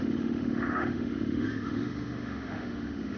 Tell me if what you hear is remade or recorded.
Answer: remade